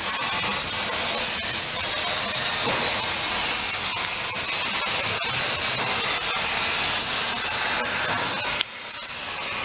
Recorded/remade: recorded